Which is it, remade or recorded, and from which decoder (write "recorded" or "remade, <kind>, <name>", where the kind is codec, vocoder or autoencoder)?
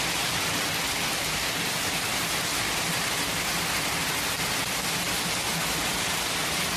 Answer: recorded